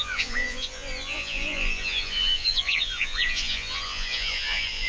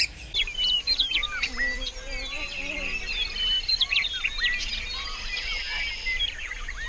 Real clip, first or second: second